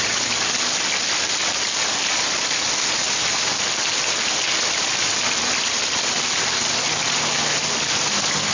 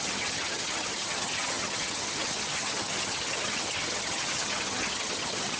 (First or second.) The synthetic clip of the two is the second